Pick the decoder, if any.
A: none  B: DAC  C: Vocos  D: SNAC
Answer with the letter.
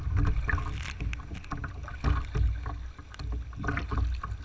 A